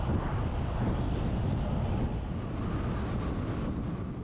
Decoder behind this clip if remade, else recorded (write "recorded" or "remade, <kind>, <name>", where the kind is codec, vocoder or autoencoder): recorded